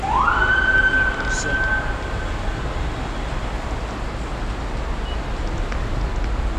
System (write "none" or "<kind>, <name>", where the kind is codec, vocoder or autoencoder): none